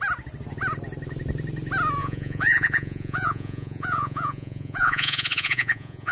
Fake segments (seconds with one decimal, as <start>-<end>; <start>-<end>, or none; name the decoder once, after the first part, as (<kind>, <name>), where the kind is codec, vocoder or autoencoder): 2.0-6.1 (vocoder, Vocos)